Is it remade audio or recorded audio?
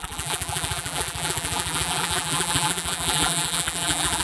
remade